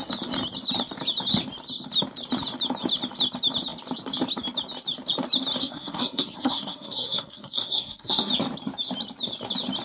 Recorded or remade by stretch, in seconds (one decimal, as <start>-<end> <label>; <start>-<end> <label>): 0.0-5.6 recorded; 5.6-8.3 remade; 8.3-9.8 recorded